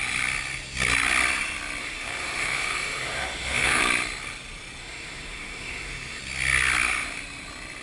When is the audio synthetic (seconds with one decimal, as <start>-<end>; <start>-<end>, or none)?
1.8-3.8; 4.8-6.2